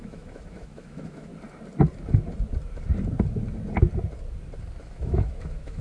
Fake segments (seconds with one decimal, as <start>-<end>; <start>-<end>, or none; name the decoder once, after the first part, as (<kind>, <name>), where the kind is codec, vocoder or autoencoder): 0.0-1.3 (autoencoder, DAC-VAE); 4.8-5.8